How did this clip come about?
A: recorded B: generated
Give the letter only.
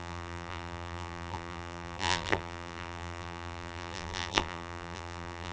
B